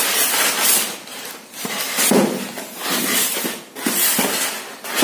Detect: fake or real real